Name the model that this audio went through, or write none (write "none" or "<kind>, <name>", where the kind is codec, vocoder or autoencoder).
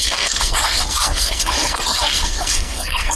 codec, SNAC